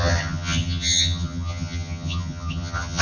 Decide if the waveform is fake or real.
fake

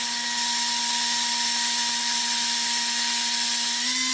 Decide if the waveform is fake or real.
real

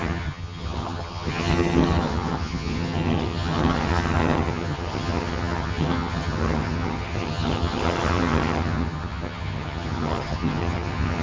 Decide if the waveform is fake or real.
fake